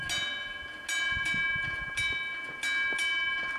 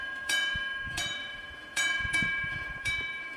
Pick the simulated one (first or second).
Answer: second